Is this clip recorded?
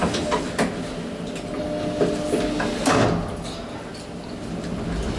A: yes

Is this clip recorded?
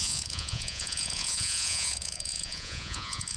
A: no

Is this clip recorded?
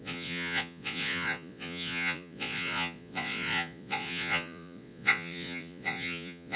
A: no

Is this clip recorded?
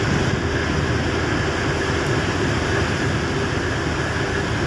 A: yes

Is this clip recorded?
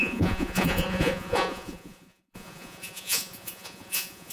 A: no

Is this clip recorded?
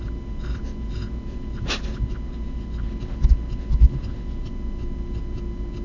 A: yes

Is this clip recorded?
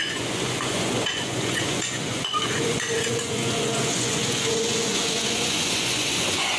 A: no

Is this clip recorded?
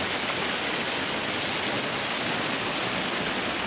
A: yes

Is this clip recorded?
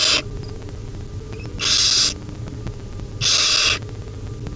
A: yes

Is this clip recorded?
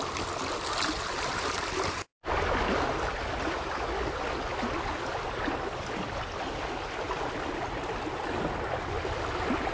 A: yes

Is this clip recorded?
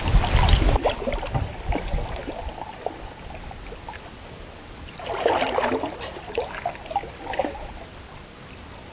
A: yes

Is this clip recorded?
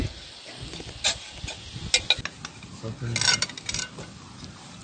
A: yes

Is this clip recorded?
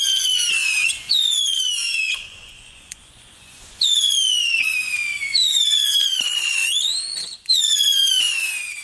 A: no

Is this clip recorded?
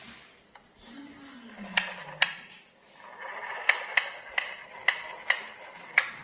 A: yes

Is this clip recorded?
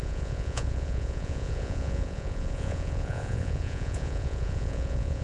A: no